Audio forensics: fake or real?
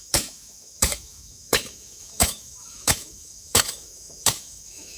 fake